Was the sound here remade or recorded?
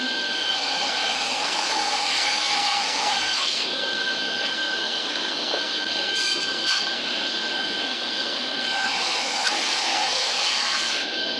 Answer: remade